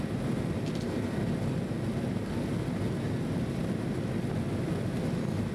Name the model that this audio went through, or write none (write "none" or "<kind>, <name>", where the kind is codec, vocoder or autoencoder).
none